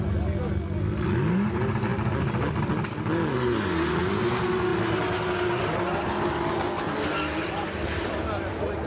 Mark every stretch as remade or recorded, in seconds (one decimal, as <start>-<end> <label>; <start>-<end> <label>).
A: 0.0-8.9 recorded